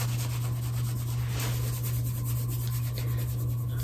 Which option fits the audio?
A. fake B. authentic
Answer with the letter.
B